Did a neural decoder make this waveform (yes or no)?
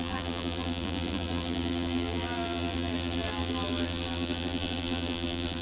yes